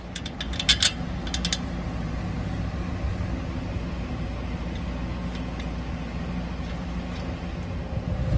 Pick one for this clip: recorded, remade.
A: recorded